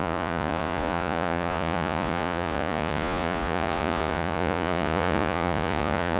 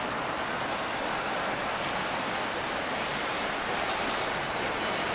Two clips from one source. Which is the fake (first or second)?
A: first